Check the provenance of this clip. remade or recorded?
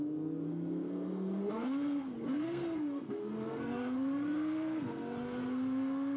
remade